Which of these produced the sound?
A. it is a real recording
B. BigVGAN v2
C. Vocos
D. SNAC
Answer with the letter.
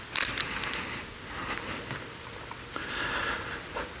A